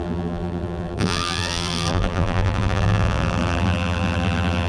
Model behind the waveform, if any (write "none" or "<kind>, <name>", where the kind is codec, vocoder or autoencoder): vocoder, BigVGAN v2